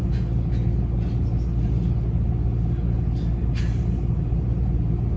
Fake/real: real